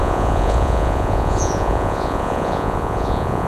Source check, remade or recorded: remade